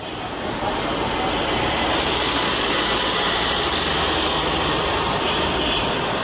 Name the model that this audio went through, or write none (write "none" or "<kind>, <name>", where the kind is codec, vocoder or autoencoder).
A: none